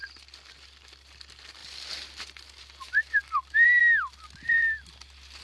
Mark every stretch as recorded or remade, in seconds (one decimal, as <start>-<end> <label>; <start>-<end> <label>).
0.0-1.6 remade; 1.6-2.2 recorded; 2.2-3.8 remade; 3.8-4.5 recorded; 4.5-5.4 remade